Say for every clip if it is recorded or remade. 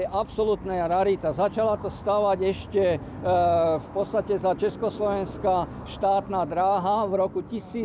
recorded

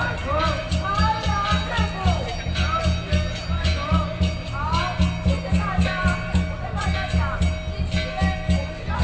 recorded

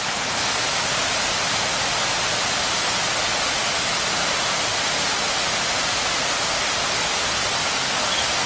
recorded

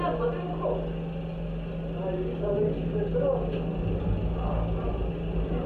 recorded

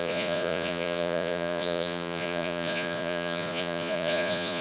remade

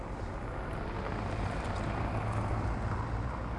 recorded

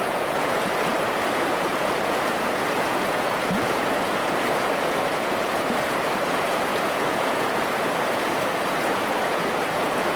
remade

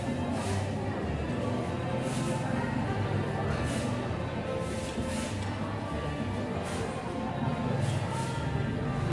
recorded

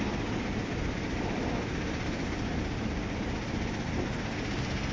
recorded